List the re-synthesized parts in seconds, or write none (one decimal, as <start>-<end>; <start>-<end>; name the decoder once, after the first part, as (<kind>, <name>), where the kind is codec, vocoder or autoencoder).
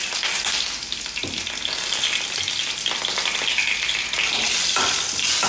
none